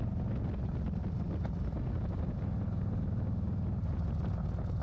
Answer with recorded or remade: recorded